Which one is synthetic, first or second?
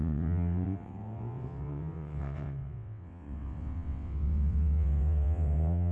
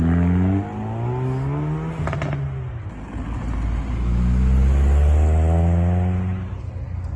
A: first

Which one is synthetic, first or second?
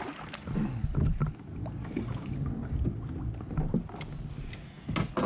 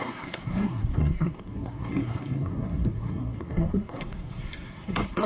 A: second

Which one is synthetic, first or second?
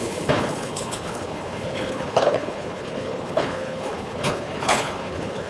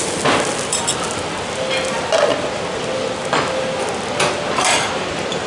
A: first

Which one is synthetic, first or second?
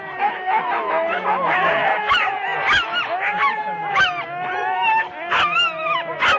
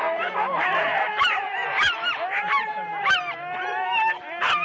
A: second